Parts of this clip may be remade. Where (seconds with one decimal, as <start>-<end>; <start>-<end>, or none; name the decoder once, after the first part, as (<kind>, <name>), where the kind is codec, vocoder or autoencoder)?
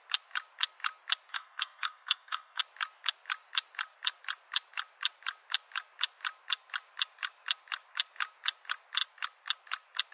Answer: 1.3-2.6 (codec, SNAC)